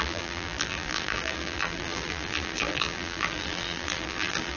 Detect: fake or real fake